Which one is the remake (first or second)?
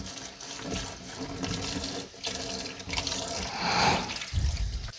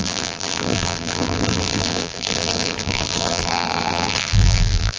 second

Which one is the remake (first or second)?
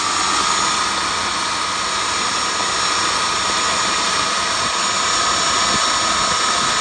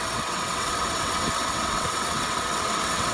second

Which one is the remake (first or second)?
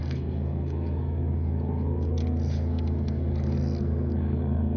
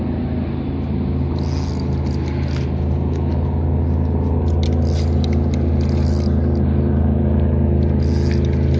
first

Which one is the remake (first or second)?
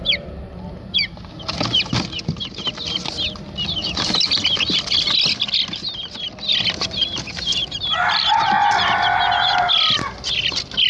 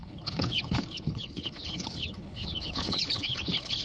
second